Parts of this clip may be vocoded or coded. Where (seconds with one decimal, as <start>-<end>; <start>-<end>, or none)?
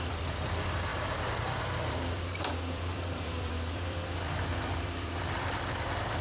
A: 0.0-6.2